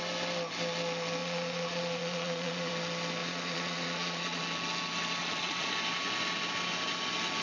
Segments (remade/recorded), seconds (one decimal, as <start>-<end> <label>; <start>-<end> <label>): 0.0-1.2 recorded; 1.2-2.7 remade; 2.7-3.2 recorded; 3.2-4.4 remade; 4.4-5.2 recorded; 5.2-5.7 remade; 5.7-7.4 recorded